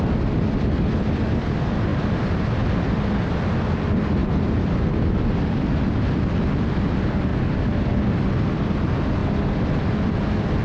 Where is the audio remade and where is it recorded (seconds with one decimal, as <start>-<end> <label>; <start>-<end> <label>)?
0.0-1.9 recorded; 1.9-3.4 remade; 3.4-4.2 recorded; 4.2-5.8 remade; 5.8-9.2 recorded; 9.2-9.9 remade; 9.9-10.6 recorded

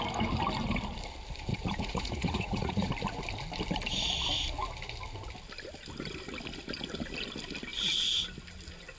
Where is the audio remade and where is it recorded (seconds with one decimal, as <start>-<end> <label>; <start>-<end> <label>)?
0.0-1.5 recorded; 1.5-2.9 remade; 2.9-9.0 recorded

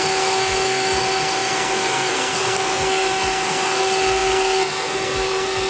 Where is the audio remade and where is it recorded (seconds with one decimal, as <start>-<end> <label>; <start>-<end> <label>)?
0.0-5.7 remade

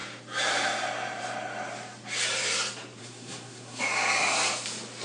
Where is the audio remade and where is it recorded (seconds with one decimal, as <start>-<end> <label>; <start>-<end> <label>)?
0.0-3.0 recorded; 3.0-3.8 remade; 3.8-5.0 recorded

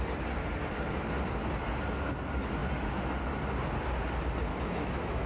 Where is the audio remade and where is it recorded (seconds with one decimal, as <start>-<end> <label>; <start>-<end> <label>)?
0.0-4.5 recorded; 4.5-5.3 remade

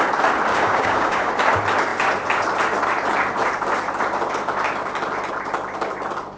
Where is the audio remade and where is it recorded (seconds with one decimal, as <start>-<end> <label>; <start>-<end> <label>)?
0.0-0.5 recorded; 0.5-1.3 remade; 1.3-6.4 recorded

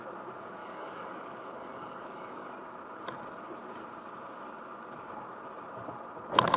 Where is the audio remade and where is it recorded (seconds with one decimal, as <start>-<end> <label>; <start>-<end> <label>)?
0.0-0.6 recorded; 0.6-2.5 remade; 2.5-6.6 recorded

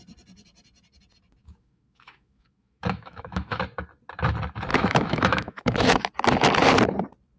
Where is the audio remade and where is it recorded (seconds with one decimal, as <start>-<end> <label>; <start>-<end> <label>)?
0.0-1.4 recorded; 1.4-3.6 remade; 3.6-4.7 recorded; 4.7-6.0 remade; 6.0-7.4 recorded